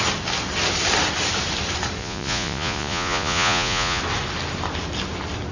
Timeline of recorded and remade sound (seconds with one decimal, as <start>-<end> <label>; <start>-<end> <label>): 0.0-2.0 recorded; 2.0-4.0 remade; 4.0-5.5 recorded

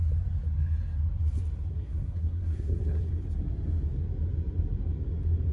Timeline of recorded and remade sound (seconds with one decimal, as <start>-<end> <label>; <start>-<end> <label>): 0.0-1.7 recorded; 1.7-3.1 remade; 3.1-5.5 recorded

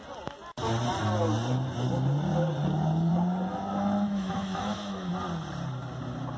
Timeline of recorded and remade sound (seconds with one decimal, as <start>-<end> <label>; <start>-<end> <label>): 0.0-3.5 recorded; 3.5-5.1 remade; 5.1-6.4 recorded